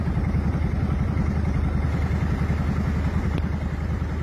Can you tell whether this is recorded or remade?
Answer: recorded